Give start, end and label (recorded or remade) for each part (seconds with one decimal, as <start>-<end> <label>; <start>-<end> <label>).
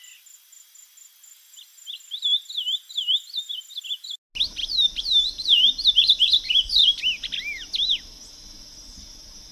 0.0-4.6 recorded; 4.6-7.0 remade; 7.0-9.5 recorded